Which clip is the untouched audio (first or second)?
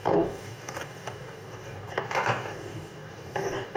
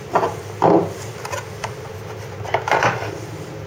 second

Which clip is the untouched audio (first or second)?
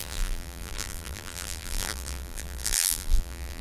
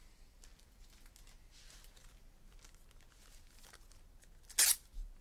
second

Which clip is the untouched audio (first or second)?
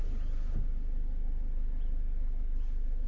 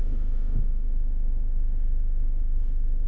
first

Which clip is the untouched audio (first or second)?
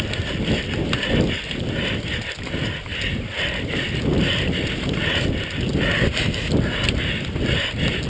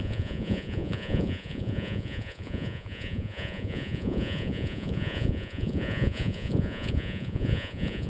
first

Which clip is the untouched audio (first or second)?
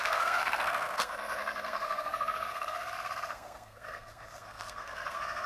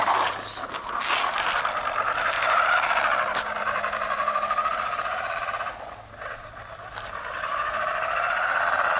second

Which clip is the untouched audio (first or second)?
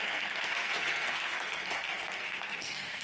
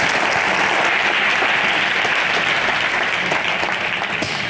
second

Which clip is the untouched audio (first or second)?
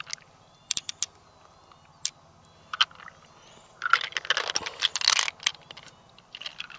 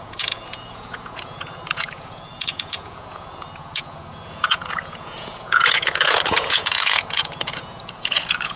first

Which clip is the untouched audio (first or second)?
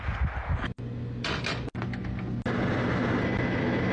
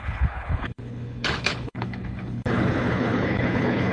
first